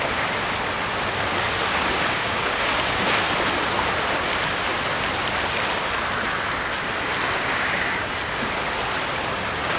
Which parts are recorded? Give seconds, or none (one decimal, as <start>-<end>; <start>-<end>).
0.0-1.7; 3.1-7.5; 8.1-9.8